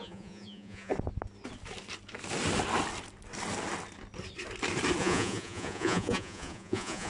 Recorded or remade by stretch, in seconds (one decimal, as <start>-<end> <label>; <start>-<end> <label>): 0.0-0.9 remade; 0.9-5.0 recorded; 5.0-7.1 remade